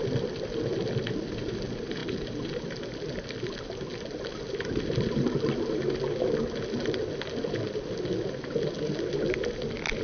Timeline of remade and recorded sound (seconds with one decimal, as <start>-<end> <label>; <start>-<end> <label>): 0.0-10.0 recorded